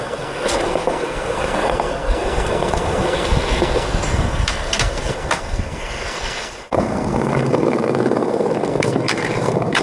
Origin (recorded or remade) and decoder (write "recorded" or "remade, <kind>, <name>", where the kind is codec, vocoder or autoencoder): remade, codec, SNAC